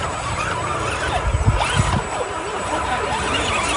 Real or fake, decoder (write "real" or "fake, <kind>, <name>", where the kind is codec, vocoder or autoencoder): real